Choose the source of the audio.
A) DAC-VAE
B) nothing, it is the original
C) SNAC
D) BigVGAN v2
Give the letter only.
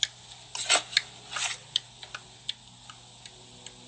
B